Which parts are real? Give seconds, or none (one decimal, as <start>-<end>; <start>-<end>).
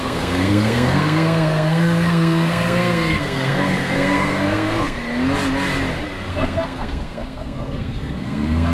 5.0-6.3